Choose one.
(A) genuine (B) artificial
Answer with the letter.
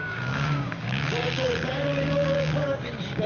B